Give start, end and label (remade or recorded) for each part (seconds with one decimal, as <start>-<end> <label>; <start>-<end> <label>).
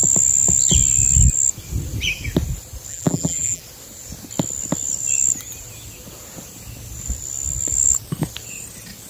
0.0-2.9 recorded; 2.9-3.6 remade; 3.6-9.1 recorded